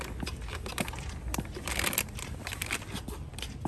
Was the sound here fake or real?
real